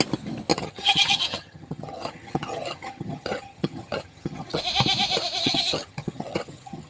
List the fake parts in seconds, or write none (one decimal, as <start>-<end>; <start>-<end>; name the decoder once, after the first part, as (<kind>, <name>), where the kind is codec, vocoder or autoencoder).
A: 0.5-4.6 (vocoder, HiFi-GAN); 5.4-6.9